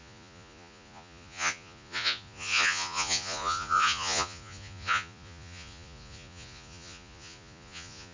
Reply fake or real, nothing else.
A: fake